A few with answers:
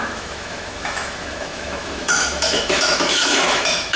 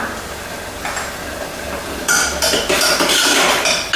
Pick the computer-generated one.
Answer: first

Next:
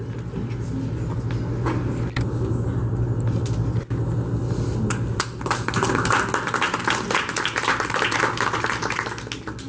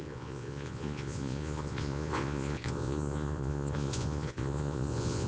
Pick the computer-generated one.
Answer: second